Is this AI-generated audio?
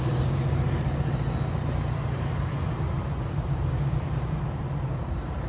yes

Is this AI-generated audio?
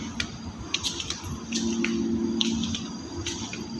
no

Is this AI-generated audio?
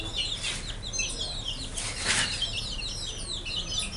no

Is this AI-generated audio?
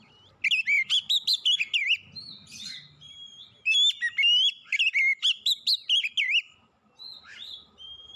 no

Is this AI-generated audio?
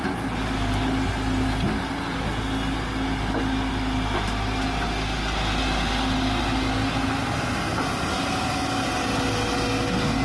no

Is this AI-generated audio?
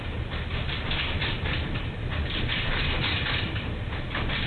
no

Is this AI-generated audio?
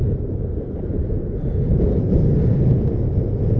no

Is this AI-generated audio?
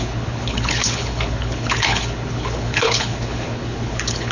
yes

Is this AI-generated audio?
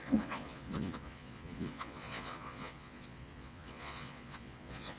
yes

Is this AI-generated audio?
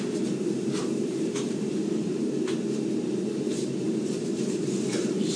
yes